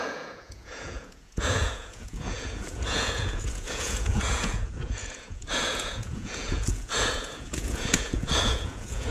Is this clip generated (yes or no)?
yes